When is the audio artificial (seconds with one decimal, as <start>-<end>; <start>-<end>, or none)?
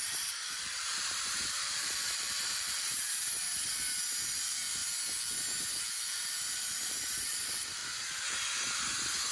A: 0.0-4.8; 6.1-7.8